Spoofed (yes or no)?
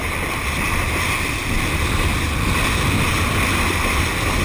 no